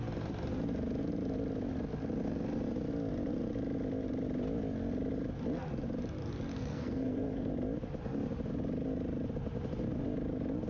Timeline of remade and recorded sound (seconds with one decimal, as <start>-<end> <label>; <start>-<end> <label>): 0.0-6.5 recorded; 6.5-7.5 remade; 7.5-10.7 recorded